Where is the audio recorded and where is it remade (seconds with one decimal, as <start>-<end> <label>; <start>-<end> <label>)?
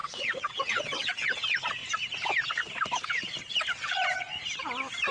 0.0-1.4 remade; 1.4-5.1 recorded